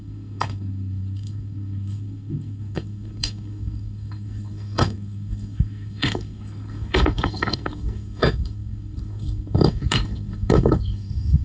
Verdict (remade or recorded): remade